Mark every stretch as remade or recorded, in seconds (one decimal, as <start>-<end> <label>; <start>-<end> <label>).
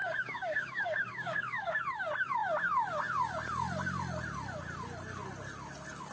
0.0-1.8 remade; 1.8-6.1 recorded